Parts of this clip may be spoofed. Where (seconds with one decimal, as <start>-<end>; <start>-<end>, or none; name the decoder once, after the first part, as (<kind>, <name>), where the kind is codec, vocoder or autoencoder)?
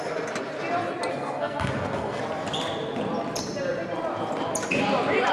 1.1-2.2 (codec, SNAC)